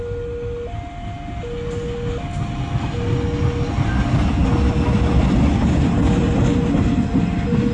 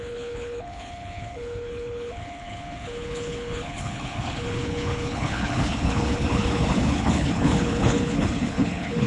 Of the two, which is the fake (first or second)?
second